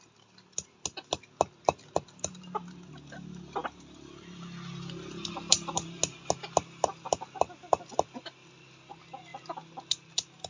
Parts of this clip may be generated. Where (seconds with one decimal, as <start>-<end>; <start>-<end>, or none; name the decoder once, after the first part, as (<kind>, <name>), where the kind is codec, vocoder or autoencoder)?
none